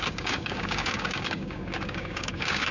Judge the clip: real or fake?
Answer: fake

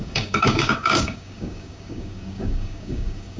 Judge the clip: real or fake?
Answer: fake